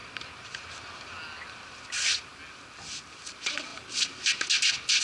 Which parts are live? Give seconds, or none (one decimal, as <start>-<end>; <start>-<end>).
0.0-5.0